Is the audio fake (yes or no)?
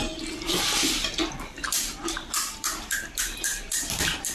no